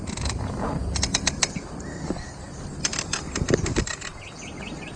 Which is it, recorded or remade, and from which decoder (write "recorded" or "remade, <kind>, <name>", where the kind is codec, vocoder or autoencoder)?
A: recorded